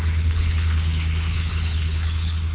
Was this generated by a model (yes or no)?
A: yes